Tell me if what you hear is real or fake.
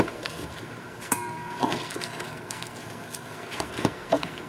fake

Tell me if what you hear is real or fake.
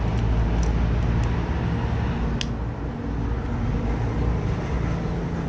real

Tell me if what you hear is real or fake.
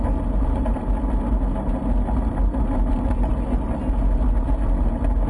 real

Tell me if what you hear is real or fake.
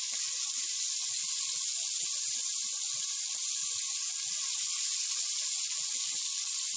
real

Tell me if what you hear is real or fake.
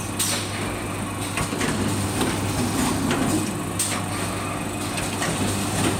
real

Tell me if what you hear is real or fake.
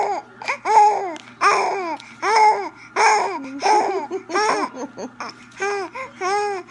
real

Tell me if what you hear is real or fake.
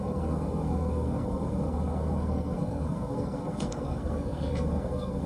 fake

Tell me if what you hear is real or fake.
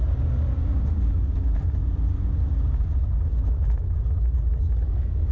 real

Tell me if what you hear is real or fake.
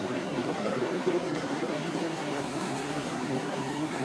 fake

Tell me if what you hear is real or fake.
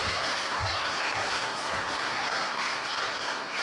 fake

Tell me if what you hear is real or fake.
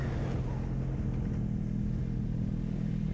real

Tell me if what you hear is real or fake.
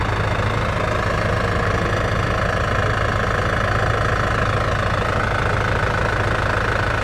real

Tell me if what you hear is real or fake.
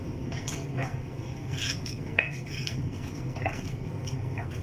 fake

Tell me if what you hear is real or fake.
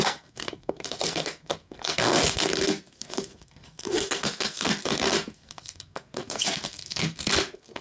fake